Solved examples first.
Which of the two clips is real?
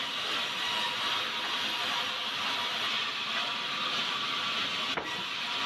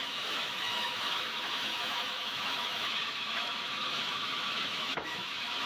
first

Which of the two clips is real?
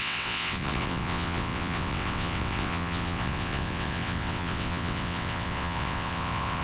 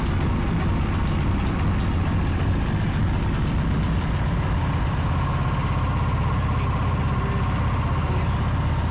second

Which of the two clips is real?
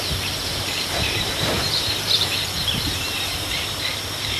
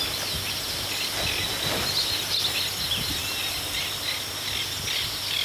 second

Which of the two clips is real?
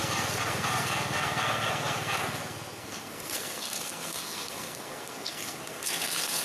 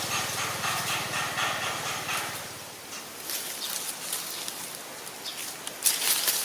second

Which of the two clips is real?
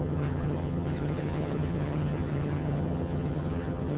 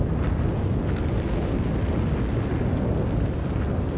second